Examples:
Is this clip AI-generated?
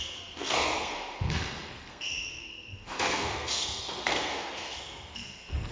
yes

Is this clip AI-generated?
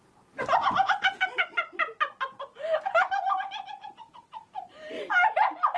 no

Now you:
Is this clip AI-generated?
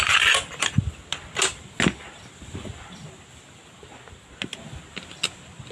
no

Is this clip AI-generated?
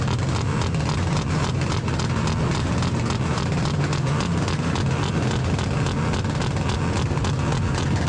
no